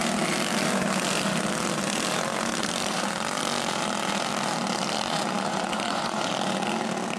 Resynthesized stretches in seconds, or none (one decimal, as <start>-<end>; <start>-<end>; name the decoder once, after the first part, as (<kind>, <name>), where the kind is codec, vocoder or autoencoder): 5.5-6.3 (vocoder, Vocos)